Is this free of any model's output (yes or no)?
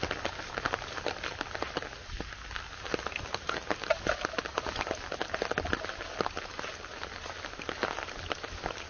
yes